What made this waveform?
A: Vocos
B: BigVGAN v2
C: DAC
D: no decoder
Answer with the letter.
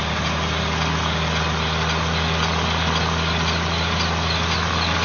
D